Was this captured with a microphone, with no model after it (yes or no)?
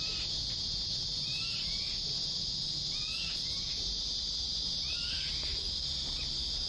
yes